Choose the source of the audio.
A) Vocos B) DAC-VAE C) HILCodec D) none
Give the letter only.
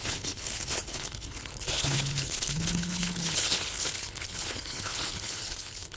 C